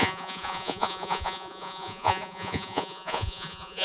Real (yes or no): no